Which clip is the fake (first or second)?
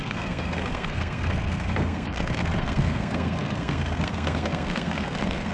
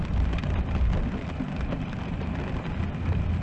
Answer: first